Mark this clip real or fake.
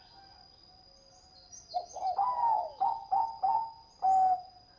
real